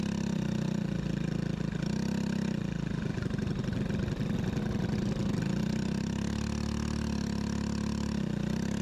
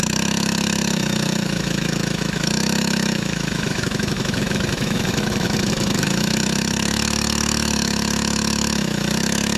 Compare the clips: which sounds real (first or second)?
first